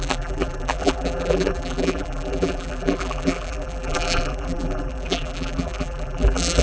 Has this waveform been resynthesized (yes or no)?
yes